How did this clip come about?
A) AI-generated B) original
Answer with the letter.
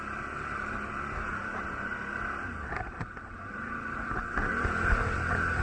B